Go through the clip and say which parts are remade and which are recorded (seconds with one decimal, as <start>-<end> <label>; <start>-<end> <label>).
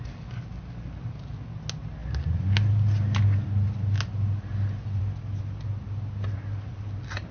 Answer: 0.0-7.3 recorded